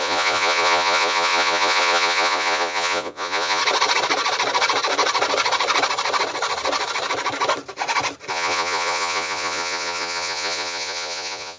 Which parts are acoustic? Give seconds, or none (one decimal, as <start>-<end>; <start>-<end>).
3.6-8.3